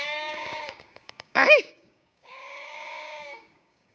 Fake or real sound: fake